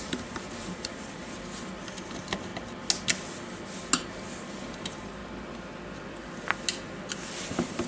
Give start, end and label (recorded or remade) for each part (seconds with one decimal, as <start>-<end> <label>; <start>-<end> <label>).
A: 0.0-1.2 remade; 1.2-2.0 recorded; 2.0-2.5 remade; 2.5-4.5 recorded; 4.5-5.2 remade; 5.2-7.5 recorded; 7.5-7.9 remade